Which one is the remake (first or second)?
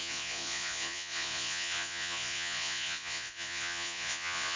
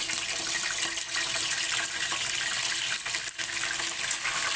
first